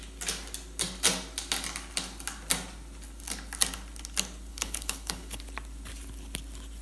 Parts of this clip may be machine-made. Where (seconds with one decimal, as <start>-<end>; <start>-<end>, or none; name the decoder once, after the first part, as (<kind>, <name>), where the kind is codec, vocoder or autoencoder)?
4.5-5.4 (codec, HILCodec)